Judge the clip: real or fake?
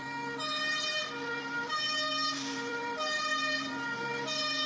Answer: fake